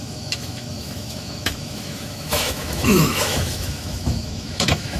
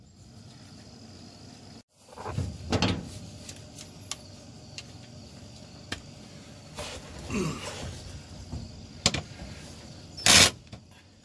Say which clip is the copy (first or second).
first